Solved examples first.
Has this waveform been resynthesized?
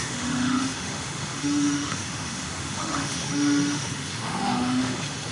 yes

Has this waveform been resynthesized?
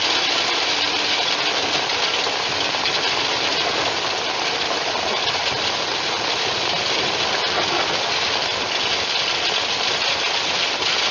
no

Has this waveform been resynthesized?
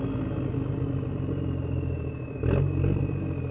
no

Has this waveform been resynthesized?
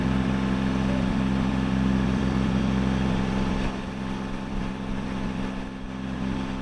yes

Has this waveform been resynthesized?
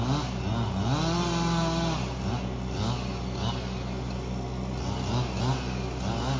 no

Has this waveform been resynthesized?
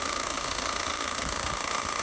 yes